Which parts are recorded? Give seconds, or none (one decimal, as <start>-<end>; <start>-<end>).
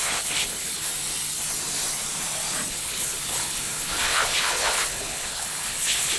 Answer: 0.9-2.7